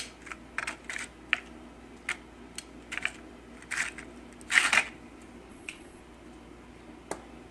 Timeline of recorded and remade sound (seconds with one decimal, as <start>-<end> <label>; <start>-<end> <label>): 0.0-5.5 recorded; 5.5-6.0 remade; 6.0-7.5 recorded